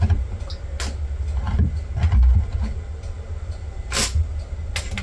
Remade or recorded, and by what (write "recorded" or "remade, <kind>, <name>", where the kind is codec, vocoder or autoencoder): recorded